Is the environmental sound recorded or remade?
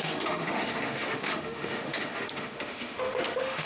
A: remade